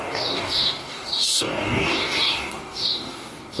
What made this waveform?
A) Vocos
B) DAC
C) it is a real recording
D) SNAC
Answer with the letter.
B